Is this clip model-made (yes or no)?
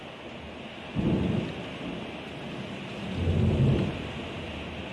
no